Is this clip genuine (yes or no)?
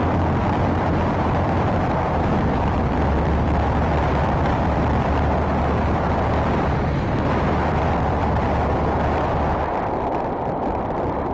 no